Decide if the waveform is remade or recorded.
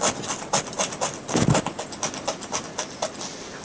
recorded